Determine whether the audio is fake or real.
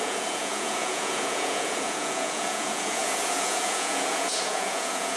fake